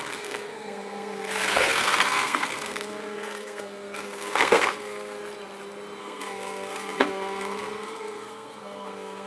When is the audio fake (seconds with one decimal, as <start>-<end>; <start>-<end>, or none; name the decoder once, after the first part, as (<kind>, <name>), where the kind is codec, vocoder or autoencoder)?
0.0-5.2 (codec, SNAC); 6.0-9.3